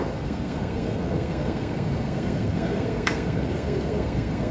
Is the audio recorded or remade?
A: remade